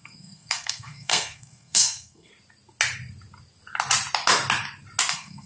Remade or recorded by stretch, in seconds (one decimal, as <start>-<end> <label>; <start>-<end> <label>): 0.0-2.3 remade; 2.3-5.1 recorded; 5.1-5.5 remade